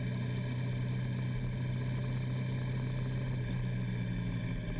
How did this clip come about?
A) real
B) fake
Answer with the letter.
A